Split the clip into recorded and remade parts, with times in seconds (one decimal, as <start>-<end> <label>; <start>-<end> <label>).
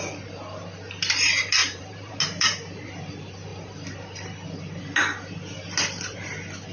0.0-1.6 recorded; 1.6-2.2 remade; 2.2-6.7 recorded